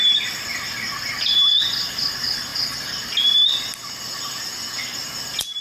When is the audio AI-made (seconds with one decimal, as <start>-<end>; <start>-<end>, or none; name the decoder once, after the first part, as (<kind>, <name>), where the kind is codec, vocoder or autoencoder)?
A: none